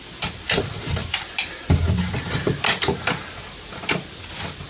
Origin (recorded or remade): recorded